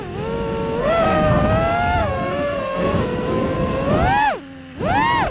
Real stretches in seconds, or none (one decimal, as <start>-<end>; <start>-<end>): 0.0-0.8; 1.4-2.0; 3.9-5.3